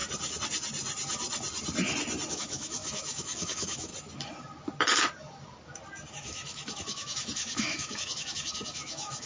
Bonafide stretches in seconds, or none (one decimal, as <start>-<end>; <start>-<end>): 0.0-2.3; 3.9-6.1